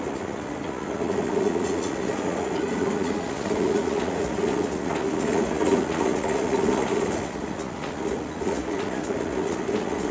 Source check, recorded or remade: remade